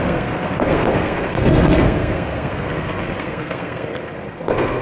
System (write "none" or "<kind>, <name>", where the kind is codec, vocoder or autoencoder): codec, SNAC